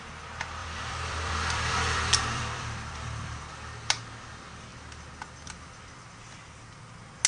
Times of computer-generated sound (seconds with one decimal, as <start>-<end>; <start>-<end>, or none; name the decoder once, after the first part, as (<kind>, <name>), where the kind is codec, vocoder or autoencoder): 0.6-3.4 (vocoder, BigVGAN v2)